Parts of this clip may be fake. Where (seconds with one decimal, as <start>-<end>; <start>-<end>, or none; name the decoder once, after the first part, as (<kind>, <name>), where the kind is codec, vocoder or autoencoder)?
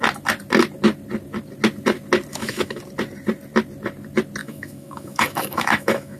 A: 2.3-2.8 (autoencoder, DAC-VAE); 4.4-6.2